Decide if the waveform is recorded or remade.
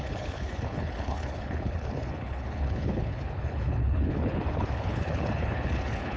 remade